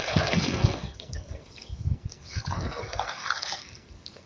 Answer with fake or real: fake